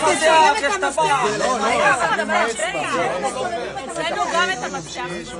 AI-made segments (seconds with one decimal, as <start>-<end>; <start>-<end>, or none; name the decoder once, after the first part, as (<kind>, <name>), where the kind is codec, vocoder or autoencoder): 1.2-2.1 (autoencoder, DAC-VAE)